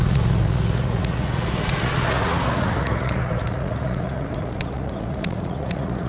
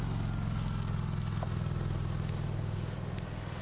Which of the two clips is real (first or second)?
second